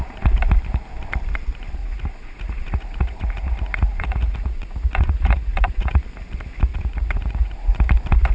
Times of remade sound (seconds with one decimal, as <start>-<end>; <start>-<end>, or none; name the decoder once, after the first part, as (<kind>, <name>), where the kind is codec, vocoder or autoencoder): 1.8-6.0 (vocoder, Vocos); 6.7-7.9